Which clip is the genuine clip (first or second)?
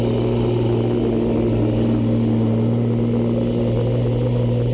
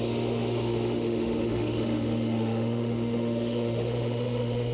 first